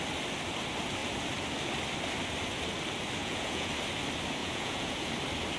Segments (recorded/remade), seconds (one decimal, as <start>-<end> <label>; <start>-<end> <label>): 0.0-3.2 recorded; 3.2-3.7 remade; 3.7-4.4 recorded; 4.4-5.1 remade; 5.1-5.6 recorded